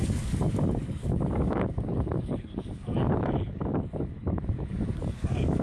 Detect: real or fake fake